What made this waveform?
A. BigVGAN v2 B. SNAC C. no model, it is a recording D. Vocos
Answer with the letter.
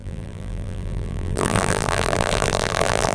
A